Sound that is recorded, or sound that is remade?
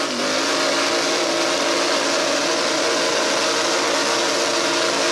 recorded